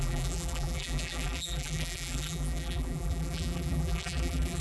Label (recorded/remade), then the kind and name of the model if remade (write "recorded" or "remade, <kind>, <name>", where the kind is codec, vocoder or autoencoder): remade, vocoder, BigVGAN v2